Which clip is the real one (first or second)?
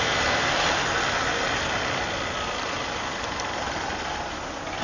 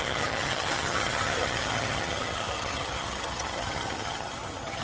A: first